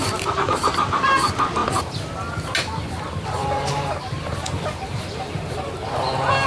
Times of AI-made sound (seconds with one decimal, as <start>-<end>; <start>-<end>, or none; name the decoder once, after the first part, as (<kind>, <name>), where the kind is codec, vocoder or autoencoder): 0.0-1.0 (vocoder, BigVGAN v2); 3.4-5.7